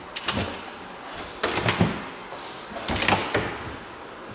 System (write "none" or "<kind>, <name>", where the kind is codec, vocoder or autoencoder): none